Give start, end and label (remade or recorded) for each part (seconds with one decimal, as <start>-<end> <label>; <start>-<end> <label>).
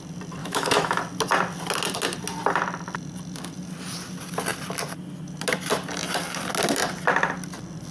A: 0.0-0.4 recorded; 0.4-1.0 remade; 1.0-7.9 recorded